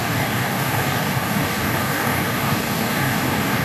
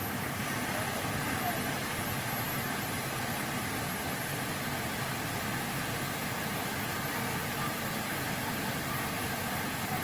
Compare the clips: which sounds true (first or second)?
second